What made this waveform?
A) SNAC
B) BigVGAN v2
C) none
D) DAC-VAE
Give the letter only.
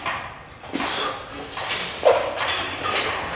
C